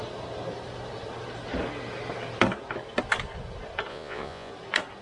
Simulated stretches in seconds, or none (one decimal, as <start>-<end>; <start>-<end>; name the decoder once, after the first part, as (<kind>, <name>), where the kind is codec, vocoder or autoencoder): 3.9-4.5 (vocoder, Vocos)